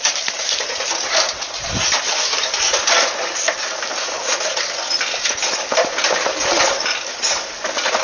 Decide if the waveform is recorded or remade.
recorded